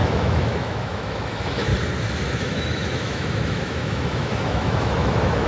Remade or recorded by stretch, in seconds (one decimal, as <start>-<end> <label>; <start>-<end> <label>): 0.0-1.7 remade; 1.7-2.4 recorded; 2.4-5.5 remade